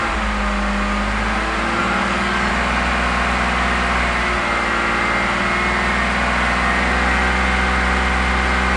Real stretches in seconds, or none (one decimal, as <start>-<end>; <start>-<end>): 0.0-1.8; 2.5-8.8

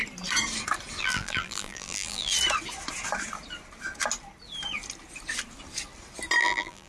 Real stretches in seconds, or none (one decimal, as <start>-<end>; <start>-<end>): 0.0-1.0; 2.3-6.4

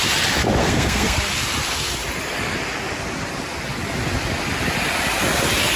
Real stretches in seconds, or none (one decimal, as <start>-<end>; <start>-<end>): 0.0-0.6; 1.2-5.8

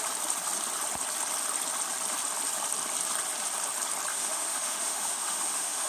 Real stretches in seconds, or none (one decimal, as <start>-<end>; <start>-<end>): 0.0-4.1

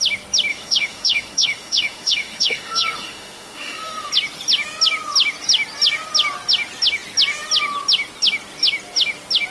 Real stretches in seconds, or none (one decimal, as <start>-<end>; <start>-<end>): 0.0-0.5; 4.1-9.5

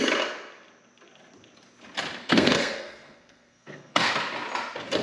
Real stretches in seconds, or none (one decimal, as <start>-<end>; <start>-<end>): 0.0-2.2; 4.1-5.0

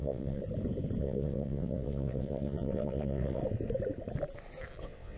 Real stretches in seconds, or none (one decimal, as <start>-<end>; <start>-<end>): 0.4-1.0; 3.4-4.8